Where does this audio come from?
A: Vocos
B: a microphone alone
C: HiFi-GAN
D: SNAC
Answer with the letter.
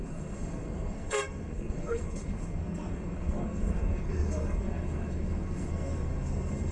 D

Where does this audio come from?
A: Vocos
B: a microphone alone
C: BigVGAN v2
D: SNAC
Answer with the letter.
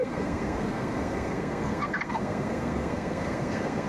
D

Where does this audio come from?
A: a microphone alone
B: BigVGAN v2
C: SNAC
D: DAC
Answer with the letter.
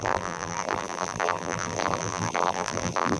B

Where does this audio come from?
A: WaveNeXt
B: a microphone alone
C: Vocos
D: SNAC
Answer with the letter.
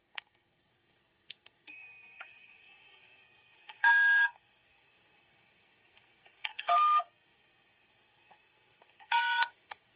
D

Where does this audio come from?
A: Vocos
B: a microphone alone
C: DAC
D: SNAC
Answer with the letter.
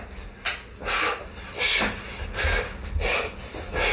B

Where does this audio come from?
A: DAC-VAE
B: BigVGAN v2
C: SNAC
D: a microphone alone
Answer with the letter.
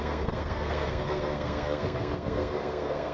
C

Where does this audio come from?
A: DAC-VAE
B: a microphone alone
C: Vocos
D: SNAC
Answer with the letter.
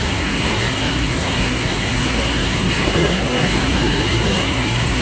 D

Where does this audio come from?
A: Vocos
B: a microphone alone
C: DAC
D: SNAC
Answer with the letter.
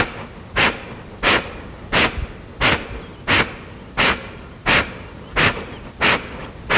B